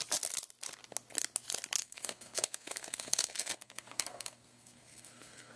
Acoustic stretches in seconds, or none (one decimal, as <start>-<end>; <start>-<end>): 0.0-1.8